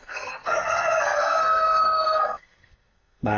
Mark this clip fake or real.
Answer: fake